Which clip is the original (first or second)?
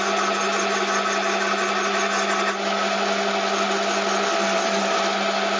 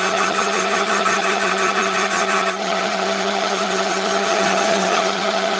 first